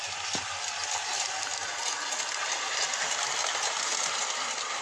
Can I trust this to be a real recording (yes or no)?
yes